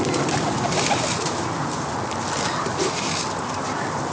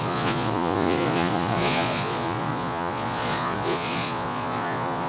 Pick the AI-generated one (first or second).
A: second